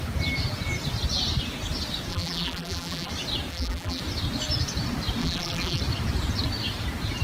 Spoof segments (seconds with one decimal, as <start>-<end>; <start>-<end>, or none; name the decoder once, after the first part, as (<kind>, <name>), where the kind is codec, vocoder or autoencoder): 2.1-3.1 (vocoder, BigVGAN v2); 3.5-4.0; 5.2-5.8